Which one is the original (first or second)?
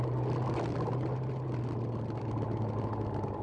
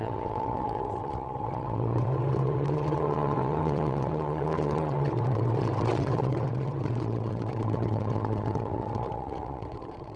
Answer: first